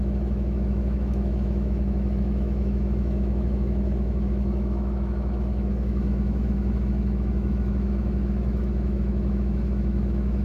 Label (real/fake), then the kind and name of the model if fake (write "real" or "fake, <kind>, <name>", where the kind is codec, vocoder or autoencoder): fake, autoencoder, DAC-VAE